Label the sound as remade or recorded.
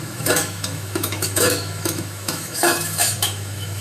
remade